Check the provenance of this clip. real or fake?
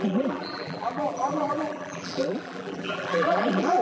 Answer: fake